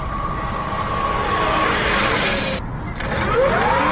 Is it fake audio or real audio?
real